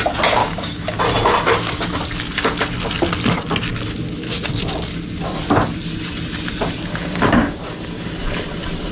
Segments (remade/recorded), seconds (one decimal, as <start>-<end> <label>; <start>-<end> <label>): 0.0-0.4 recorded; 0.4-1.0 remade; 1.0-7.0 recorded; 7.0-7.6 remade; 7.6-8.9 recorded